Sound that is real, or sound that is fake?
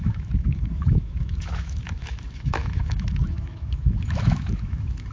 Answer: fake